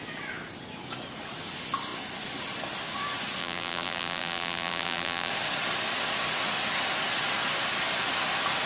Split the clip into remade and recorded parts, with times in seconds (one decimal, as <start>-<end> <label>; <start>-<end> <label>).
0.0-3.4 recorded; 3.4-5.3 remade; 5.3-8.7 recorded

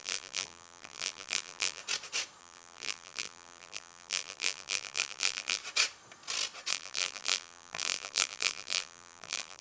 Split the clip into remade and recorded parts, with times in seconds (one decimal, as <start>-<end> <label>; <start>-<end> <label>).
0.0-1.8 remade; 1.8-2.4 recorded; 2.4-5.6 remade; 5.6-6.7 recorded; 6.7-9.6 remade

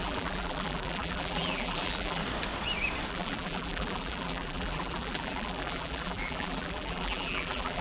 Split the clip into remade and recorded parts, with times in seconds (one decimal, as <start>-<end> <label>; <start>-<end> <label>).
0.0-2.2 remade; 2.2-3.1 recorded; 3.1-7.8 remade

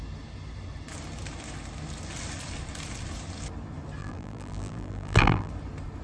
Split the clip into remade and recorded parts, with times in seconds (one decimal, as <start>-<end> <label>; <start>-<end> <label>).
0.0-4.0 recorded; 4.0-5.5 remade; 5.5-6.0 recorded

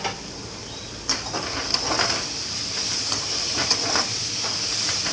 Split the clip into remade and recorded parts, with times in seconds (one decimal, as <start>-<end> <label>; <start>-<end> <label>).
0.0-1.7 recorded; 1.7-4.0 remade; 4.0-5.1 recorded

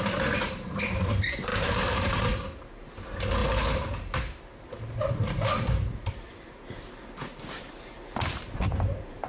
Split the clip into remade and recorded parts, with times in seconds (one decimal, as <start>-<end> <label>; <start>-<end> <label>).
0.0-3.4 remade; 3.4-4.8 recorded; 4.8-9.3 remade

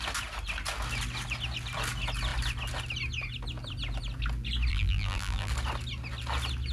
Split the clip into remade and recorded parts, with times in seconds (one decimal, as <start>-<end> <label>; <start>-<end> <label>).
0.0-4.7 recorded; 4.7-5.5 remade; 5.5-6.7 recorded